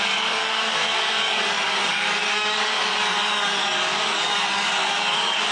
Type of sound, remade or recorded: remade